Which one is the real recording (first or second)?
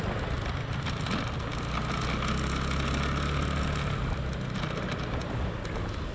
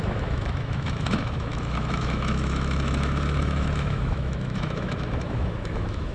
first